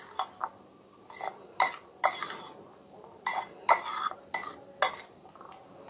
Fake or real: real